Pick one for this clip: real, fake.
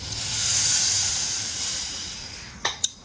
fake